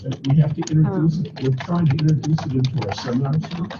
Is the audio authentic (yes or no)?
yes